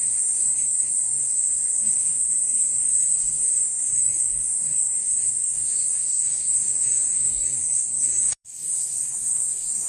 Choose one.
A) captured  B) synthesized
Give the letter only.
B